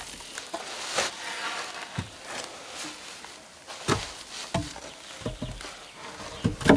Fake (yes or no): no